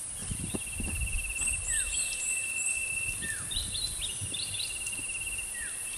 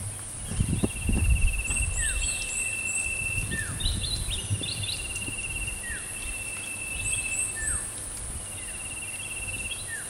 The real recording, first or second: second